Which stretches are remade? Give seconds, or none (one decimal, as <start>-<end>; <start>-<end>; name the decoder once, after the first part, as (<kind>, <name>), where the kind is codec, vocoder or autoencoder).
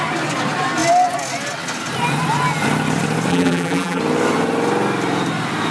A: 3.3-4.0 (vocoder, BigVGAN v2)